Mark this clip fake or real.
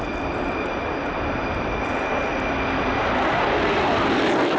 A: real